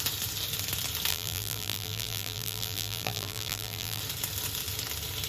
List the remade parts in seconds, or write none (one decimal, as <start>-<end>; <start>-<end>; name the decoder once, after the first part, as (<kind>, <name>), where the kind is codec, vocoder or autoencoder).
1.1-4.0 (vocoder, BigVGAN v2)